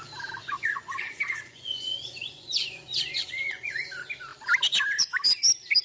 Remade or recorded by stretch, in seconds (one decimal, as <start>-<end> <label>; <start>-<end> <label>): 0.0-0.4 recorded; 0.4-3.9 remade; 3.9-5.8 recorded